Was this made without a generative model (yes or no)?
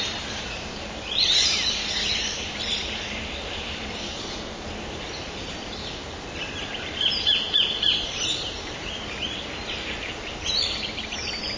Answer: no